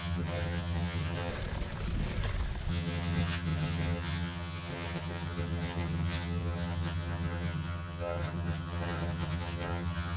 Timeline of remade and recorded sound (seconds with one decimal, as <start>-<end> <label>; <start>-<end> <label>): 0.0-1.3 remade; 1.3-2.7 recorded; 2.7-10.2 remade